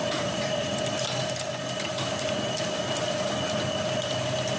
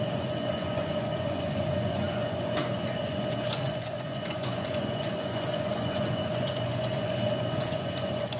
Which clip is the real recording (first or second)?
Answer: first